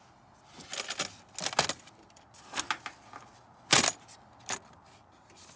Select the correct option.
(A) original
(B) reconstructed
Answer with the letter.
A